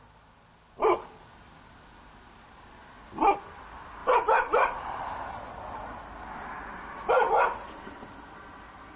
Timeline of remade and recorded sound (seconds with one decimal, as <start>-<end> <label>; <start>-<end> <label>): 0.0-4.0 recorded; 4.0-5.4 remade; 5.4-9.0 recorded